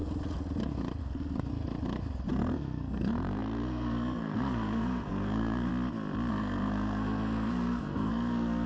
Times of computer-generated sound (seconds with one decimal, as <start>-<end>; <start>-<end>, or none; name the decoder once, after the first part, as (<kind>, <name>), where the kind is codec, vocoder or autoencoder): 1.0-1.5 (codec, SNAC); 2.3-5.7; 6.3-8.7